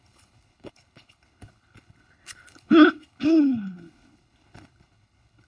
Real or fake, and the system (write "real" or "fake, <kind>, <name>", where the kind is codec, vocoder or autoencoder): fake, codec, HILCodec